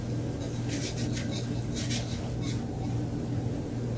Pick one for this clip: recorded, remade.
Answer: recorded